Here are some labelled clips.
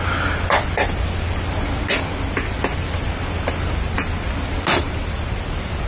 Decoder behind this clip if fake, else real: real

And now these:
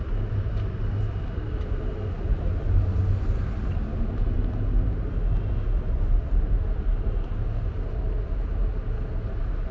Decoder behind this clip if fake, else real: real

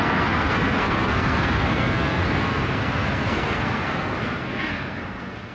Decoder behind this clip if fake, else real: fake, codec, SNAC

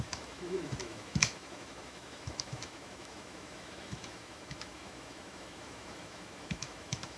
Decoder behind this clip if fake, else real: fake, autoencoder, DAC-VAE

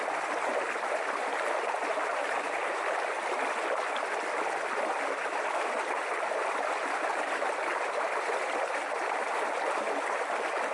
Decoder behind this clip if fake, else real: real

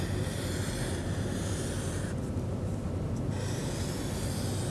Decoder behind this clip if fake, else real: real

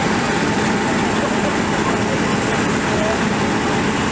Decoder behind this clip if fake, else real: real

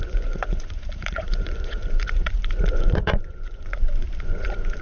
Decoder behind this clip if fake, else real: fake, vocoder, Vocos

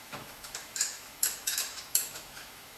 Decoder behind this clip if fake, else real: fake, autoencoder, DAC-VAE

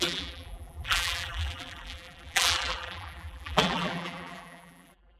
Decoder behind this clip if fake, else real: fake, vocoder, BigVGAN v2